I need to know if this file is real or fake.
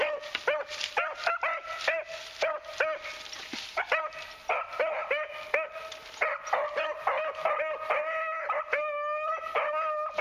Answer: real